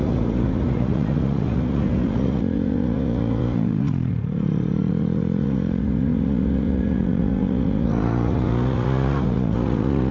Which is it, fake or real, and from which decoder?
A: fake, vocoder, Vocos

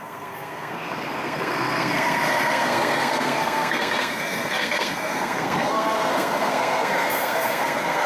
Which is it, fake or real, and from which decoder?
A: fake, codec, SNAC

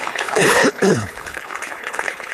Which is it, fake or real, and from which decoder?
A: fake, codec, HILCodec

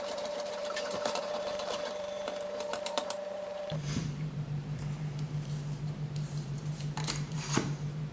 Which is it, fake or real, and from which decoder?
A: fake, vocoder, BigVGAN v2